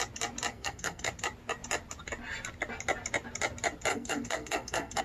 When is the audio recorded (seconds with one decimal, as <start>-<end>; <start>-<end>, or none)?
0.0-0.5; 1.1-3.9